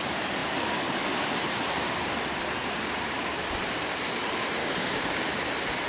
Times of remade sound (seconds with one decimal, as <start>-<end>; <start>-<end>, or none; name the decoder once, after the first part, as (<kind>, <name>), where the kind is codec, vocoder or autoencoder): 4.6-5.2 (codec, DAC)